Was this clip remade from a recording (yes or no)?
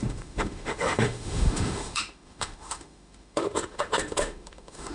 yes